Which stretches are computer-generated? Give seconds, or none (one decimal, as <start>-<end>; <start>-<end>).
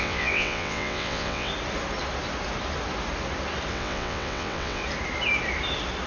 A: 0.0-1.5; 3.7-4.8